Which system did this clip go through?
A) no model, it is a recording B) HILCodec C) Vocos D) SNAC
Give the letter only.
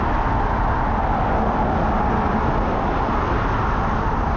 A